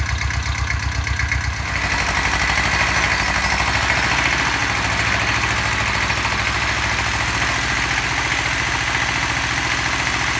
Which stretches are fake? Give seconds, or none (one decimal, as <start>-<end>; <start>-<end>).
none